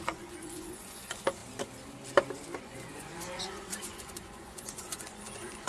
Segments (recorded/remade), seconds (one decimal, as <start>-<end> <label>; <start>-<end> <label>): 0.0-1.4 remade; 1.4-2.6 recorded; 2.6-5.7 remade